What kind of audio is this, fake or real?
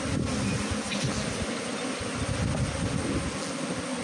real